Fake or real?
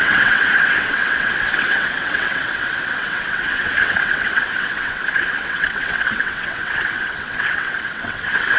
fake